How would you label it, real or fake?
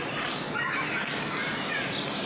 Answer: real